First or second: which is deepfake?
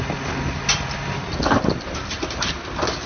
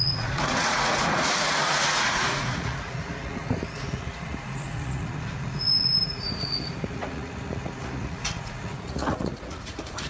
second